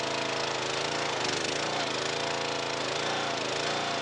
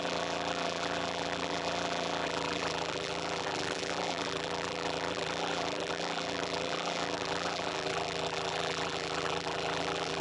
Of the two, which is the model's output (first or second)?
second